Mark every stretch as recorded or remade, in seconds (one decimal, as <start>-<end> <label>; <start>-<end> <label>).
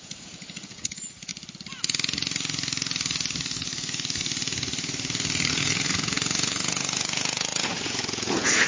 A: 0.0-1.3 remade; 1.3-5.5 recorded; 5.5-8.7 remade